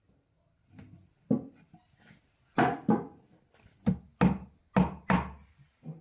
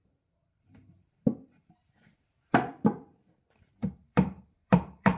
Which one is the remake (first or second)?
second